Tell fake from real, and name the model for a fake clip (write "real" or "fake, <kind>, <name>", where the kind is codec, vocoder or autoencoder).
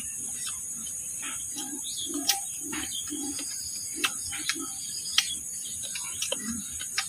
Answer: fake, vocoder, BigVGAN v2